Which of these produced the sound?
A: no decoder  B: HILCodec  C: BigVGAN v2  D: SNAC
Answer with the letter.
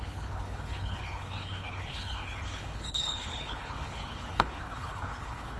B